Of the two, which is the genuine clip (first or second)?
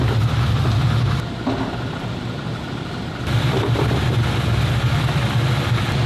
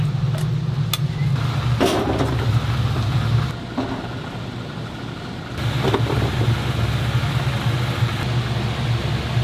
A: second